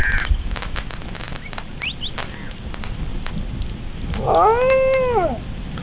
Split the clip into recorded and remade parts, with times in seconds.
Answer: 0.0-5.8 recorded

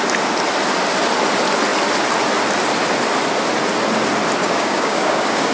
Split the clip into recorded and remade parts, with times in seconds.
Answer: 0.0-4.4 recorded; 4.4-5.5 remade

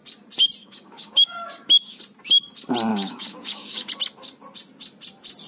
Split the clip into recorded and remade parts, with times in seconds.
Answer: 0.0-0.6 recorded; 0.6-2.0 remade; 2.0-2.9 recorded; 2.9-3.9 remade; 3.9-5.5 recorded

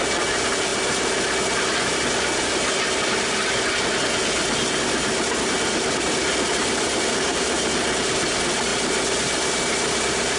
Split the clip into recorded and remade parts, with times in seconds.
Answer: 0.0-10.4 recorded

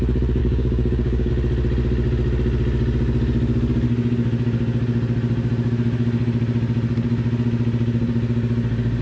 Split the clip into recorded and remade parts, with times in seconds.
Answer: 0.0-0.4 recorded; 0.4-1.3 remade; 1.3-9.0 recorded

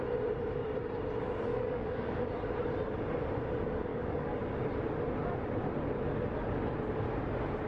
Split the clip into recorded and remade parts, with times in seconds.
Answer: 0.0-1.5 recorded; 1.5-2.2 remade; 2.2-3.9 recorded; 3.9-4.4 remade; 4.4-7.7 recorded